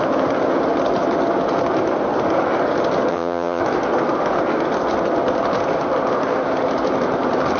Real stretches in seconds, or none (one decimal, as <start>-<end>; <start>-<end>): 0.0-3.1; 3.6-7.6